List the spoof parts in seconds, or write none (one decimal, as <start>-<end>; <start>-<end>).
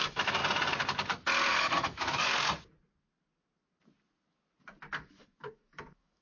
0.0-0.4; 1.5-2.3; 5.0-6.2